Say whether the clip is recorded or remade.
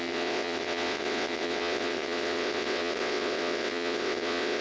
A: remade